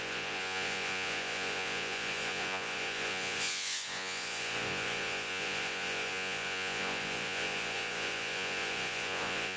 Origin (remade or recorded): remade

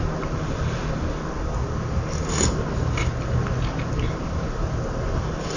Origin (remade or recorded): recorded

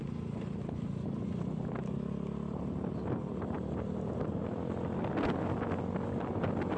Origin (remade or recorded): recorded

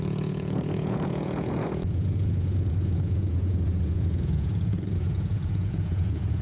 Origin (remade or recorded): remade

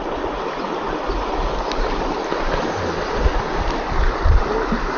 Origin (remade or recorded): recorded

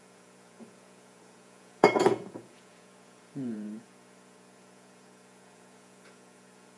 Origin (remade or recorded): remade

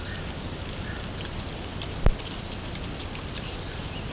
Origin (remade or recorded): recorded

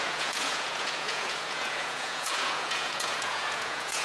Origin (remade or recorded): remade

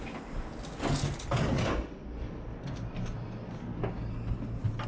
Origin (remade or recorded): recorded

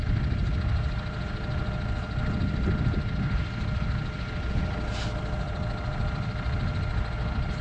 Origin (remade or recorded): recorded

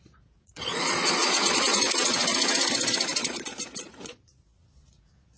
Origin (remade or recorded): remade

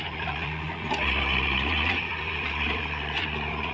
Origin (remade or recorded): remade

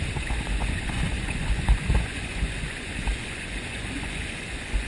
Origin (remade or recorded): remade